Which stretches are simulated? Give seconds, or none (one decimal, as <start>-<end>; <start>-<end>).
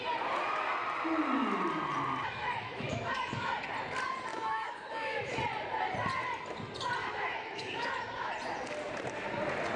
2.2-3.6; 4.3-5.4; 7.0-8.3